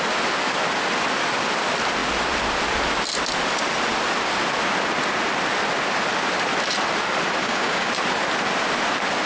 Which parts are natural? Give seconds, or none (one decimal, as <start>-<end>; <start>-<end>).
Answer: 0.0-7.4; 7.9-9.3